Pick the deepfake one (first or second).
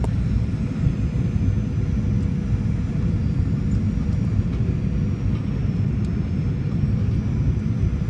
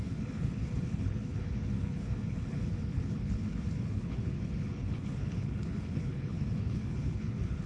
second